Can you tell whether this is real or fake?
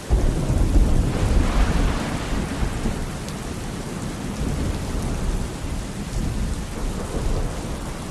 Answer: real